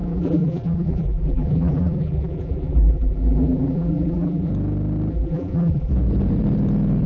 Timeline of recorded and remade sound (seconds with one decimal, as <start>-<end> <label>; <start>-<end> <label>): 0.0-4.5 remade; 4.5-5.1 recorded; 5.1-5.9 remade; 5.9-7.1 recorded